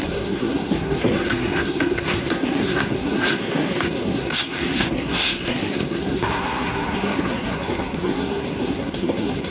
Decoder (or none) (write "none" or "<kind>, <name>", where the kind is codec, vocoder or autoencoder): codec, SNAC